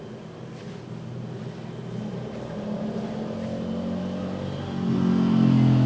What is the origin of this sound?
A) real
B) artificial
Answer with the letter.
A